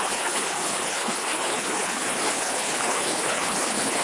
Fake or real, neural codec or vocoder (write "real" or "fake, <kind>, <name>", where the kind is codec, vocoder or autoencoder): fake, codec, HILCodec